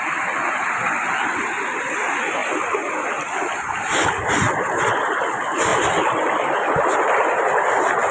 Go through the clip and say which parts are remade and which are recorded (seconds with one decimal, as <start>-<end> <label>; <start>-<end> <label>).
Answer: 0.0-2.4 recorded; 2.4-4.7 remade; 4.7-5.7 recorded; 5.7-7.6 remade; 7.6-8.1 recorded